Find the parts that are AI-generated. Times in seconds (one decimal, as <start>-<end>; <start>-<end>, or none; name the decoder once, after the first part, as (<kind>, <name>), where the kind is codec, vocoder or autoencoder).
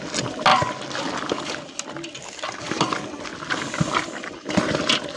none